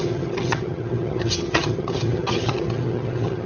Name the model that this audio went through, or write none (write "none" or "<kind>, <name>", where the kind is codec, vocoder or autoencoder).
vocoder, HiFi-GAN